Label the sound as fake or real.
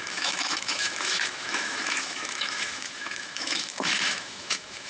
fake